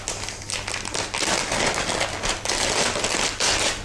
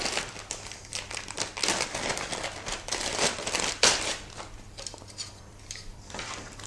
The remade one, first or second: second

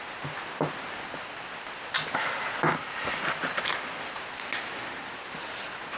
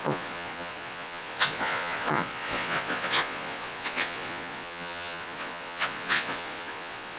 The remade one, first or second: second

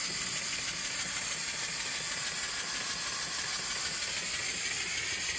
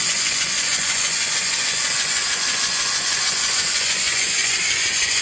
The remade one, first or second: second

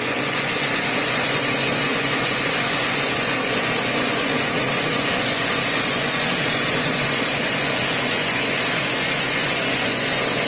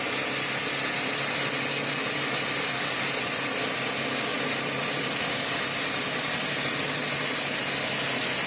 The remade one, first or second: first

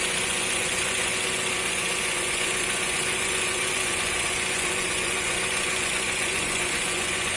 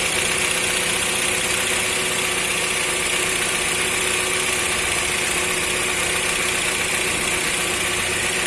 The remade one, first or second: first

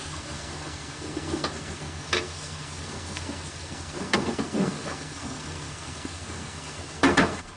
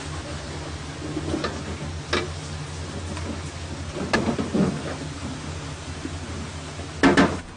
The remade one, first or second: first